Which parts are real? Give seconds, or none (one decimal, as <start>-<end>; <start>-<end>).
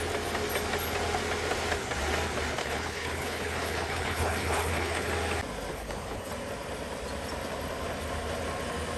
0.0-2.6; 5.1-5.7; 6.3-9.0